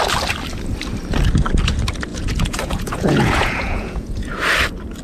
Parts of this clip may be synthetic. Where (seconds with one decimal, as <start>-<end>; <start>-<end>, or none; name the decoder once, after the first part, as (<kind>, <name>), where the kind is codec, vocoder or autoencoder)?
2.1-4.3 (vocoder, Vocos)